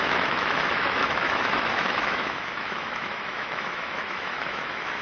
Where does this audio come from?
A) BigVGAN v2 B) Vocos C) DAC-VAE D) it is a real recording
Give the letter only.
C